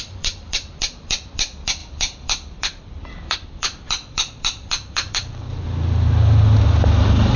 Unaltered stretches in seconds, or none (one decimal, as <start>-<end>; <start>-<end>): none